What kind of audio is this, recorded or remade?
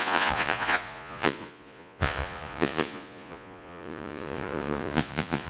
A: remade